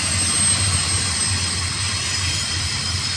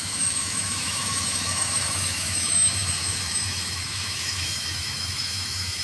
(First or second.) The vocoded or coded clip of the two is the second